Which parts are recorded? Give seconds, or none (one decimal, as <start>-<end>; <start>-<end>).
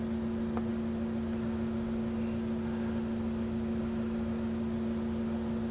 0.0-5.7